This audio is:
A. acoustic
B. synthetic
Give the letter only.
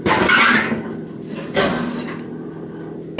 A